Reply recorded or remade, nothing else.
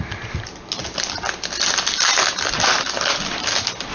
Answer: recorded